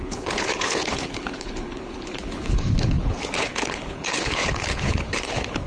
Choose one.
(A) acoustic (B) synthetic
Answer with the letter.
B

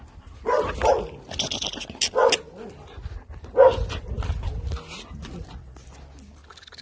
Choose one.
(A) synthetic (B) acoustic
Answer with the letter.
B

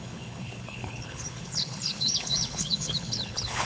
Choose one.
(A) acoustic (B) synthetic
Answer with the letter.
B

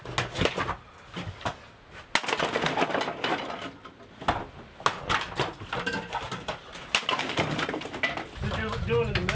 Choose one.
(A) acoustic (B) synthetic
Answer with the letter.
A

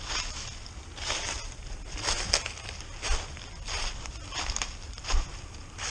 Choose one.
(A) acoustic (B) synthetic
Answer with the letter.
A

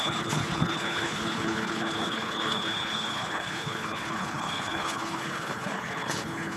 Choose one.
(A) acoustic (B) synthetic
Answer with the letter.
B